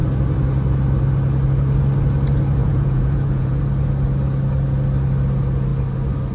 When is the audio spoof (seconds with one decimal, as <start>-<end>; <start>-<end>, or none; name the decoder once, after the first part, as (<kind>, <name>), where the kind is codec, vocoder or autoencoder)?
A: 2.6-3.6 (vocoder, Vocos)